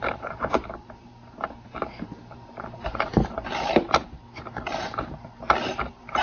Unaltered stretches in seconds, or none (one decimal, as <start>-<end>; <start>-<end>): none